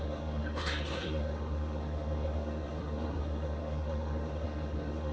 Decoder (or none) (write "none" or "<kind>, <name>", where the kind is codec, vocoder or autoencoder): codec, SNAC